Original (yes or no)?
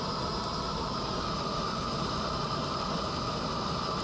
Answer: yes